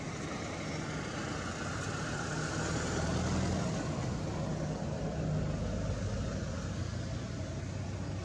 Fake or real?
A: real